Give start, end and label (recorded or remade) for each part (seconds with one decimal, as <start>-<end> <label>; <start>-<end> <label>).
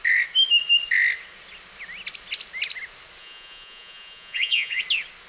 0.0-3.2 recorded; 3.2-4.8 remade; 4.8-5.3 recorded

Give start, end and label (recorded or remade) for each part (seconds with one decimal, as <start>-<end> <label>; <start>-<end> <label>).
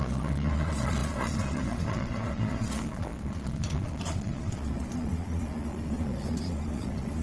0.0-7.2 remade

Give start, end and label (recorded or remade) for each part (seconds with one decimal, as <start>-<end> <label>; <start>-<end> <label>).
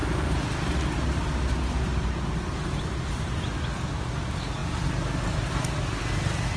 0.0-6.6 recorded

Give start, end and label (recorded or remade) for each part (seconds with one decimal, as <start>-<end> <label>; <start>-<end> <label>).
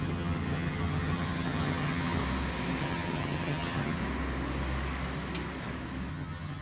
0.0-2.2 remade; 2.2-2.8 recorded; 2.8-4.0 remade; 4.0-6.1 recorded; 6.1-6.6 remade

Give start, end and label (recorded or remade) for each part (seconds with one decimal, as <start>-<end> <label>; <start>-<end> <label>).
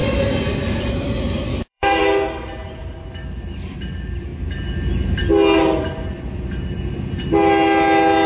0.0-1.5 recorded; 1.5-2.0 remade; 2.0-8.3 recorded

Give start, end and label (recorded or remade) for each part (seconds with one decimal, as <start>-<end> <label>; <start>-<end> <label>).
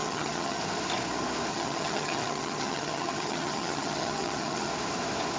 0.0-0.6 remade; 0.6-1.5 recorded; 1.5-4.7 remade; 4.7-5.4 recorded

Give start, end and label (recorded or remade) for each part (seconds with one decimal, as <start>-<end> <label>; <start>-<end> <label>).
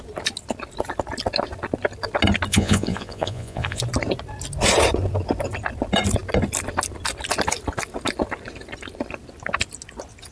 0.0-2.5 recorded; 2.5-3.8 remade; 3.8-10.3 recorded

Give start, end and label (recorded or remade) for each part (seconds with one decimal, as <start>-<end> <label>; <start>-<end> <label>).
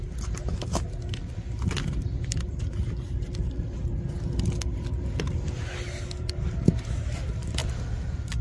0.0-8.4 recorded